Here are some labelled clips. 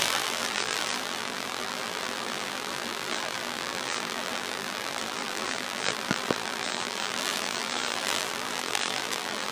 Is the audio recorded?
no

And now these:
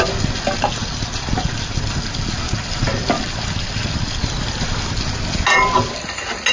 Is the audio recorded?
yes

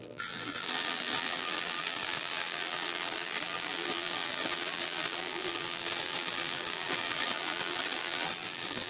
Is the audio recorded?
no